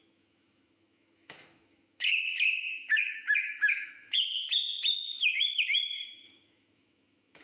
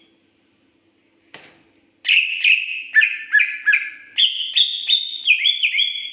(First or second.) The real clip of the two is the second